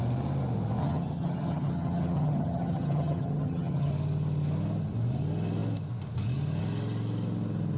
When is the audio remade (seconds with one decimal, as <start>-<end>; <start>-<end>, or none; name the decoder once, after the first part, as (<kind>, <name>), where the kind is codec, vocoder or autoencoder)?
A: 0.8-3.9 (vocoder, HiFi-GAN)